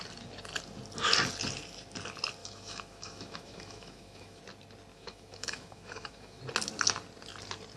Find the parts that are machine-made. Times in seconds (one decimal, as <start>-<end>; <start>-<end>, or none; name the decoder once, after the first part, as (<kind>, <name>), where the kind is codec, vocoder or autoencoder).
2.4-4.4 (autoencoder, DAC-VAE); 4.9-6.4